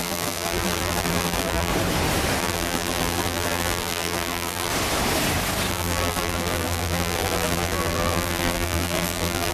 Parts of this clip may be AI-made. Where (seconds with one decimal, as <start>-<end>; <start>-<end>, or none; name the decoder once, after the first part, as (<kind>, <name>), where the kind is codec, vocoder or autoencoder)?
0.0-1.7 (vocoder, BigVGAN v2); 2.4-4.7; 5.7-9.5